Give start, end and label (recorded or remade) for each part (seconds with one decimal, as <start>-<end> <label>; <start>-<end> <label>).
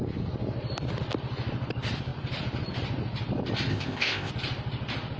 0.0-3.7 recorded; 3.7-4.3 remade; 4.3-5.2 recorded